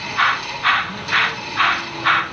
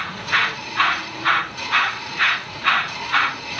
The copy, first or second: second